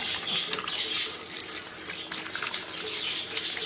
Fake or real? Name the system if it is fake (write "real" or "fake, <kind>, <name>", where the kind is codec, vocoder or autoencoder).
real